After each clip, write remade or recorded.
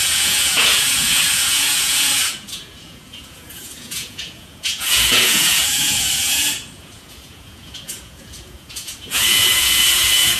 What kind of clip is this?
remade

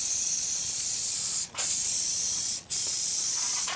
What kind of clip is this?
remade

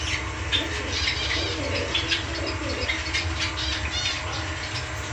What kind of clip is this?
recorded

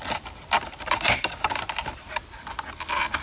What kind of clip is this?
recorded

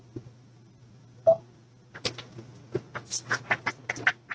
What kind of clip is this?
recorded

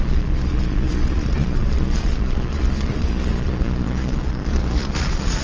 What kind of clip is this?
remade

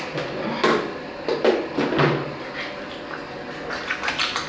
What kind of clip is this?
recorded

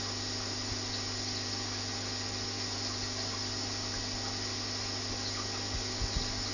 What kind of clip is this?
recorded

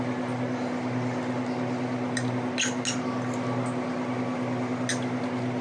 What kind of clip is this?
recorded